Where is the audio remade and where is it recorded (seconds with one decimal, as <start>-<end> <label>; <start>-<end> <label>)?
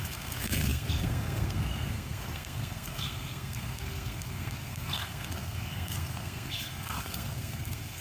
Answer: 0.0-8.0 remade